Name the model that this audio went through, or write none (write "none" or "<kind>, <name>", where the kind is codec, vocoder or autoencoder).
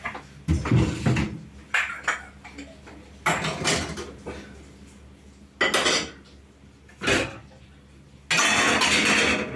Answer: none